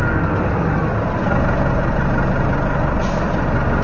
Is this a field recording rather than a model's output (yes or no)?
yes